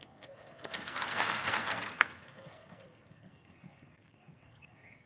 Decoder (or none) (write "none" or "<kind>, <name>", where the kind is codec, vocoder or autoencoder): codec, SNAC